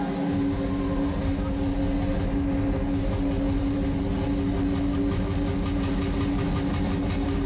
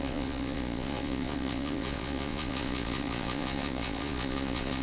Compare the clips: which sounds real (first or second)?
first